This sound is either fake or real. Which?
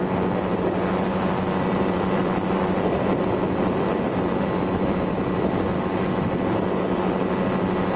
real